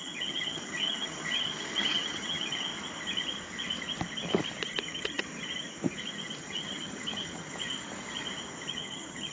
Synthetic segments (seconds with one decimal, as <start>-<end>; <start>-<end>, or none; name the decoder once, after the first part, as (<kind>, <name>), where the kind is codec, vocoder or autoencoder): 0.0-2.7 (vocoder, HiFi-GAN); 4.8-5.3; 6.4-7.5; 8.7-9.3